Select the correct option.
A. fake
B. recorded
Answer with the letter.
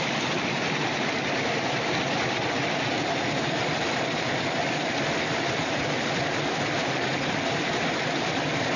B